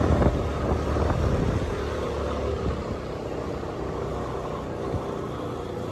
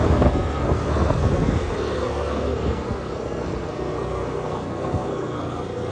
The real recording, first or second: first